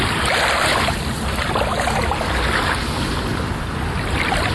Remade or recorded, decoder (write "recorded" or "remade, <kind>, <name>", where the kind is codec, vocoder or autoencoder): recorded